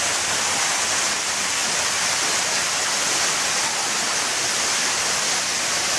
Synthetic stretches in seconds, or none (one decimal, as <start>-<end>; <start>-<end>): none